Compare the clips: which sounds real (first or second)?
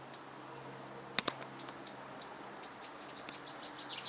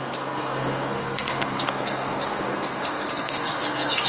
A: first